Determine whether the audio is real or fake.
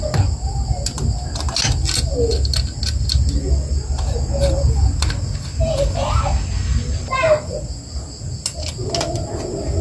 real